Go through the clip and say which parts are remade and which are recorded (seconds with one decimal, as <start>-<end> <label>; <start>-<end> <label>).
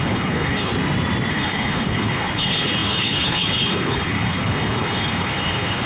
0.0-0.7 remade; 0.7-1.3 recorded; 1.3-5.9 remade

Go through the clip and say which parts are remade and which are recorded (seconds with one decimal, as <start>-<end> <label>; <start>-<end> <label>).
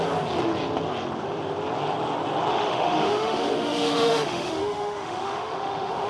0.0-2.5 recorded; 2.5-6.1 remade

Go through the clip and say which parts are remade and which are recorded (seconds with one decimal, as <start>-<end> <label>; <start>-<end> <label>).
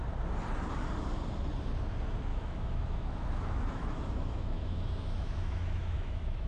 0.0-2.3 recorded; 2.3-6.5 remade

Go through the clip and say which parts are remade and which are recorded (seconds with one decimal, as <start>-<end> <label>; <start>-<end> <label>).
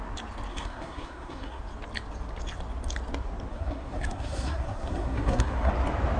0.0-0.5 recorded; 0.5-1.6 remade; 1.6-3.5 recorded; 3.5-5.7 remade; 5.7-6.2 recorded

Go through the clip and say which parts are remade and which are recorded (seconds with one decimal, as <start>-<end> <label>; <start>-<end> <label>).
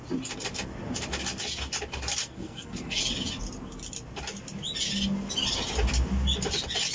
0.0-2.2 recorded; 2.2-3.0 remade; 3.0-6.9 recorded